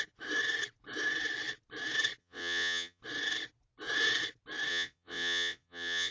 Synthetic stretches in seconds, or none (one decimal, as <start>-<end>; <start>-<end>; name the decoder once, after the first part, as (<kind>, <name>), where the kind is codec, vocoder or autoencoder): 2.2-3.0 (vocoder, Vocos); 4.7-6.1